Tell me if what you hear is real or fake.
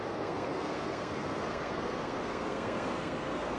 fake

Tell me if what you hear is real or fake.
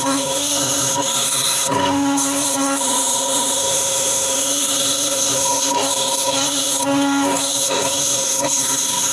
fake